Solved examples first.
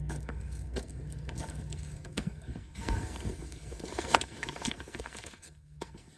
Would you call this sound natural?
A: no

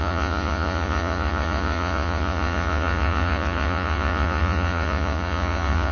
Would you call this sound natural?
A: no